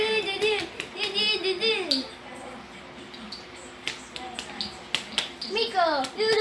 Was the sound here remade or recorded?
recorded